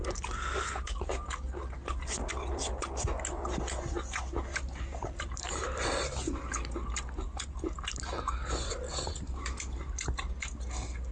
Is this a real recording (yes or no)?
yes